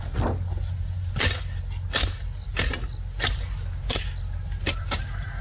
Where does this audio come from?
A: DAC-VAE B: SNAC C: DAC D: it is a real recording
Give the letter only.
D